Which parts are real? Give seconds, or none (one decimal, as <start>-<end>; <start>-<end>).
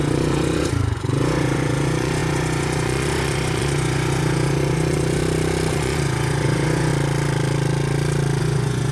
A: 5.2-5.7; 6.9-8.4